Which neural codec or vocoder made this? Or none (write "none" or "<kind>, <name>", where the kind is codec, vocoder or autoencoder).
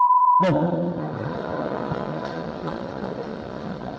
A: vocoder, Vocos